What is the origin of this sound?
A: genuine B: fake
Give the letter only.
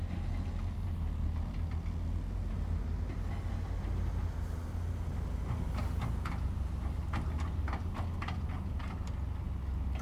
A